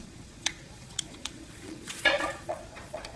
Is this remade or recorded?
remade